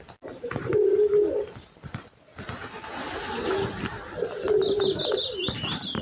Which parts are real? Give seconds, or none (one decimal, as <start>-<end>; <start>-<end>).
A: 0.0-6.0